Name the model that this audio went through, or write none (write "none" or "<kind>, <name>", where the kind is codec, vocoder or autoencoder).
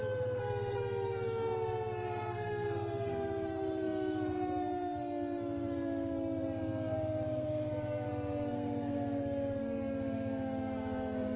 codec, SNAC